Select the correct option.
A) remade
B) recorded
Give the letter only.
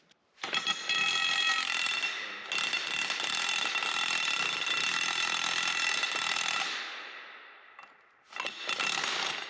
B